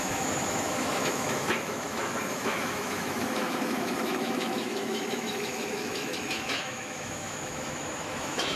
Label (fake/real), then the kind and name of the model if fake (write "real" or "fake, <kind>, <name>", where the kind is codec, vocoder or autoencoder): fake, autoencoder, DAC-VAE